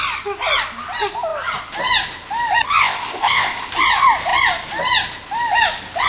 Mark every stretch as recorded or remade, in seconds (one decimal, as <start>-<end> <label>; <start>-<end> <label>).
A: 0.0-2.8 recorded; 2.8-3.7 remade; 3.7-6.1 recorded